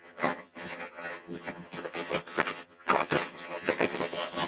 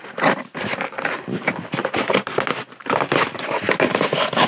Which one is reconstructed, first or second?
first